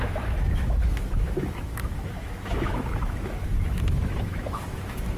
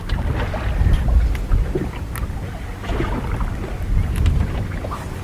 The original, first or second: second